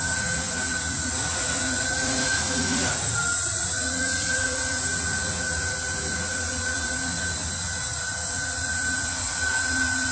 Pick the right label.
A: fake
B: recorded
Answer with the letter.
A